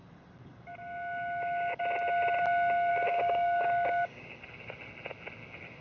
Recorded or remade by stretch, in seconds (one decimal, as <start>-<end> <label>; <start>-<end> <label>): 0.0-2.9 recorded; 2.9-4.4 remade; 4.4-5.8 recorded